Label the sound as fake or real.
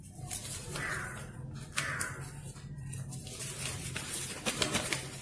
real